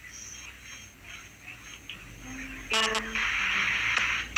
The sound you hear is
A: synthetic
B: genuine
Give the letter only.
B